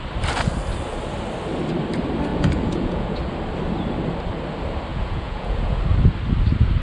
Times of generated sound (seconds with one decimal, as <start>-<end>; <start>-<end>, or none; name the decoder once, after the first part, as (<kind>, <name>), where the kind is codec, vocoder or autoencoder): 2.3-3.2 (vocoder, Vocos); 4.9-5.8